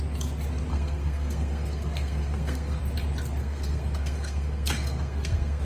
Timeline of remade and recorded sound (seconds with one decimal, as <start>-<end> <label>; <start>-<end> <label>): 0.0-0.7 recorded; 0.7-2.8 remade; 2.8-3.4 recorded; 3.4-5.6 remade